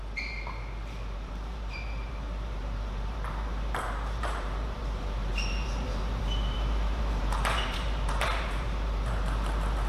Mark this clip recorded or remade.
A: remade